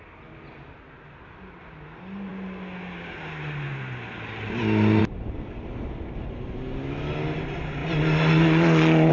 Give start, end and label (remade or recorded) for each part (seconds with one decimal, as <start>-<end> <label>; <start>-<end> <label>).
0.0-9.1 recorded

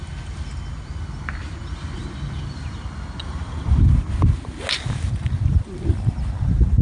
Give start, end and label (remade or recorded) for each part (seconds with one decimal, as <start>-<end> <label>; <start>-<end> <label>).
0.0-3.2 recorded; 3.2-3.8 remade; 3.8-6.8 recorded

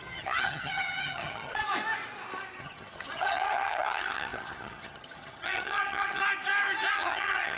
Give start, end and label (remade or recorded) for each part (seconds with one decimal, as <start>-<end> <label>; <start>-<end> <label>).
0.0-1.6 remade; 1.6-2.6 recorded; 2.6-6.2 remade; 6.2-6.9 recorded; 6.9-7.6 remade

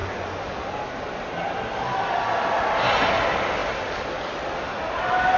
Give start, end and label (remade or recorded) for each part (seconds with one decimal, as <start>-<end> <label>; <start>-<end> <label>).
0.0-5.4 recorded

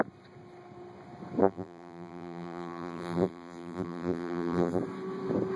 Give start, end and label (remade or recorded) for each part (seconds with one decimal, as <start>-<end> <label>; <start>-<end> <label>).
0.0-1.4 recorded; 1.4-4.8 remade; 4.8-5.6 recorded

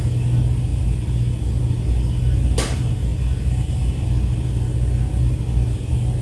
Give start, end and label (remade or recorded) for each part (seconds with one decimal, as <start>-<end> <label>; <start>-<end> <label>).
0.0-6.2 recorded